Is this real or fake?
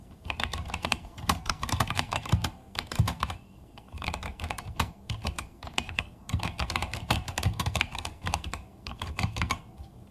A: fake